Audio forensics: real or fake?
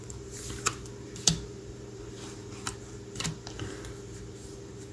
fake